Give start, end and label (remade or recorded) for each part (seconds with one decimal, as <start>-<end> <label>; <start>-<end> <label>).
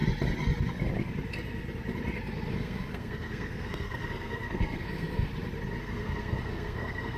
0.0-2.5 recorded; 2.5-5.3 remade; 5.3-5.8 recorded; 5.8-7.2 remade